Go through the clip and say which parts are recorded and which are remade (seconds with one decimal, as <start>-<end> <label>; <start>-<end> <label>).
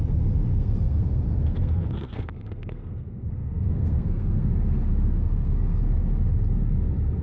0.0-0.5 recorded; 0.5-4.5 remade; 4.5-4.9 recorded; 4.9-5.8 remade; 5.8-7.2 recorded